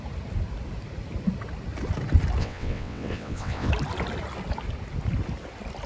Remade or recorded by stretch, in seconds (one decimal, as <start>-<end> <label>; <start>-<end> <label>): 0.0-2.4 recorded; 2.4-3.7 remade; 3.7-5.9 recorded